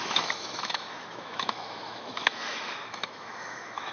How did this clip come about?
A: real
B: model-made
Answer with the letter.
B